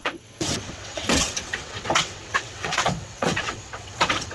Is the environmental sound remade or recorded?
remade